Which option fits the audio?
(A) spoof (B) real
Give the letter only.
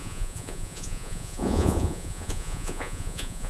A